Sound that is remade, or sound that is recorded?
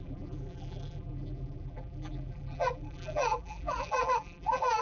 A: remade